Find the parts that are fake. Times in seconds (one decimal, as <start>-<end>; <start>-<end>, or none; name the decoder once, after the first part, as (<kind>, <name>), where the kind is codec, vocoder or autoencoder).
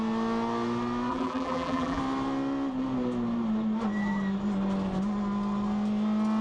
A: 1.1-2.0 (vocoder, BigVGAN v2)